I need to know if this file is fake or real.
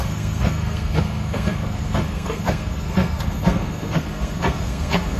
fake